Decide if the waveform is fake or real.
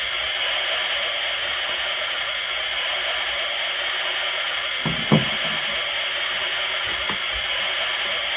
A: real